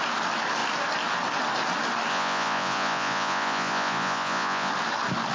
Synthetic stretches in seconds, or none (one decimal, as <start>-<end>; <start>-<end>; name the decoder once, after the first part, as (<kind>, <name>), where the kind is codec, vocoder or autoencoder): 2.1-4.7 (vocoder, Vocos)